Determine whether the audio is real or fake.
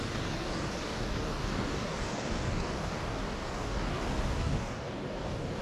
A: fake